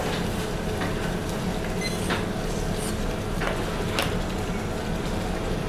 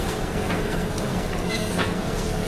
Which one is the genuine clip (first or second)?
first